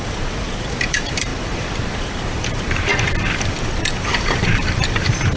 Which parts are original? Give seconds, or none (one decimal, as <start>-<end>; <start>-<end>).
2.9-3.5